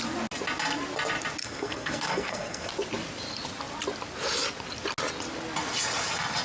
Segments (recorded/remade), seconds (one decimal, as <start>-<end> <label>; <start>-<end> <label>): 0.0-1.4 recorded; 1.4-2.7 remade; 2.7-6.4 recorded